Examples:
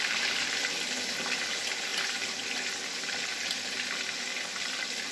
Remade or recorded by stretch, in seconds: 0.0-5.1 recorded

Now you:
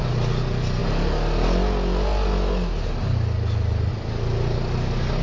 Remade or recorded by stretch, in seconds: 0.0-5.2 recorded

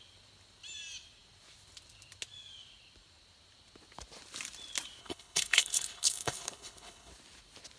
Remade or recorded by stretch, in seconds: 0.0-5.0 recorded; 5.0-7.1 remade; 7.1-7.8 recorded

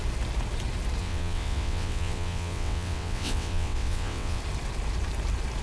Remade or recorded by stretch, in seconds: 0.0-1.0 recorded; 1.0-4.4 remade; 4.4-5.6 recorded

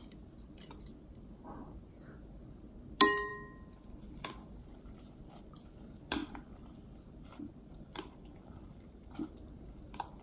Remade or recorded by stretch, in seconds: 0.0-6.2 recorded; 6.2-9.3 remade; 9.3-10.2 recorded

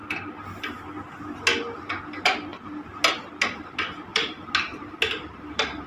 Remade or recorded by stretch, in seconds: 0.0-4.1 recorded; 4.1-5.9 remade

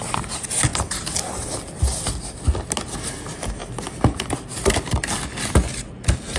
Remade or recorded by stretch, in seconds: 0.0-0.7 recorded; 0.7-2.2 remade; 2.2-3.6 recorded; 3.6-5.5 remade; 5.5-6.4 recorded